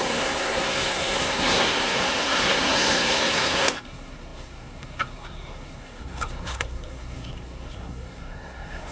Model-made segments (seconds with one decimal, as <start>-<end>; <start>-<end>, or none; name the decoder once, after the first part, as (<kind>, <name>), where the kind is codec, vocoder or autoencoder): 0.0-8.9 (codec, SNAC)